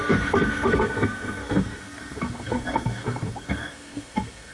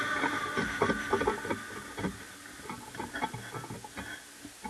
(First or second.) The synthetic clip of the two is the first